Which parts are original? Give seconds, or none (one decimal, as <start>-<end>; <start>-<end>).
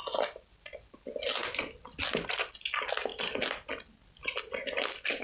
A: 0.0-5.2